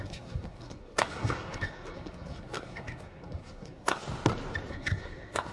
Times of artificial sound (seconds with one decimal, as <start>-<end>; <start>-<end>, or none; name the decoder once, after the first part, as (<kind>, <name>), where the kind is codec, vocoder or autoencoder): 0.0-4.0 (codec, SNAC); 4.7-5.5